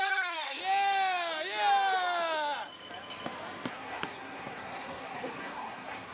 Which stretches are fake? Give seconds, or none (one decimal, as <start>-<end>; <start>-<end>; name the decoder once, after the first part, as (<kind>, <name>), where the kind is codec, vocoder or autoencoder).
0.0-0.6 (codec, SNAC); 3.7-6.1